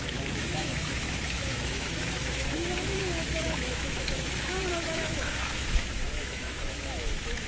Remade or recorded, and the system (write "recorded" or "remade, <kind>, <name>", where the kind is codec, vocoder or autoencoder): remade, autoencoder, DAC-VAE